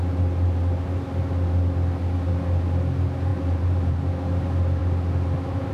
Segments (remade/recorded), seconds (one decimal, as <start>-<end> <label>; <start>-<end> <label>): 0.0-3.3 recorded; 3.3-4.0 remade; 4.0-5.7 recorded